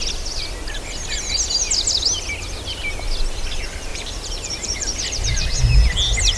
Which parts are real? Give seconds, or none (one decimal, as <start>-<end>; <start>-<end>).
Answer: 0.0-3.9; 5.5-6.4